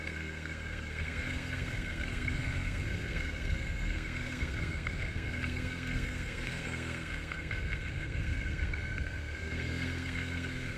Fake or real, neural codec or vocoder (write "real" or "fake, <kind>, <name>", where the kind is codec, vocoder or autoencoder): fake, codec, SNAC